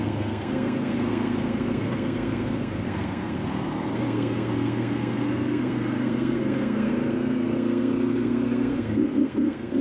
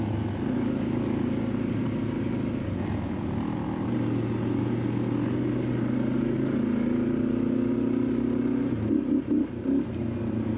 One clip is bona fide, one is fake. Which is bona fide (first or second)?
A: second